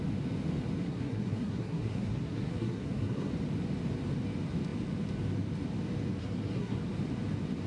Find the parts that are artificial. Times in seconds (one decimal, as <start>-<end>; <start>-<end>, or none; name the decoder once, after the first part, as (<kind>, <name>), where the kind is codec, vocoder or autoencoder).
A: 0.8-3.3 (codec, SNAC); 6.2-6.8